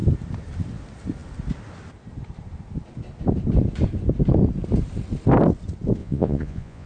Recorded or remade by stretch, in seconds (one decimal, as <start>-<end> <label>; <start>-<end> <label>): 0.0-6.0 recorded; 6.0-6.9 remade